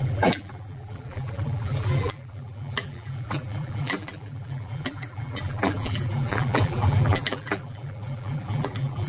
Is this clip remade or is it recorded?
remade